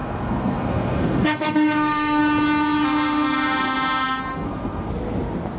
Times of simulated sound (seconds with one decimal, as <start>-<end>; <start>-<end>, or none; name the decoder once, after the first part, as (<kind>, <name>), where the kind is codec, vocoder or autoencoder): 0.0-2.2 (codec, SNAC); 4.3-4.9